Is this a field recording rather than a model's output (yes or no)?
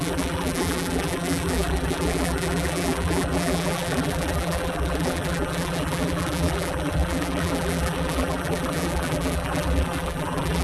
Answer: no